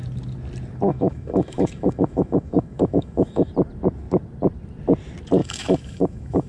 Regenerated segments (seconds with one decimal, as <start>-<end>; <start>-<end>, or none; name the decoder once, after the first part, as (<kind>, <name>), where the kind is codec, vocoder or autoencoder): 0.9-3.5 (autoencoder, DAC-VAE); 5.4-6.5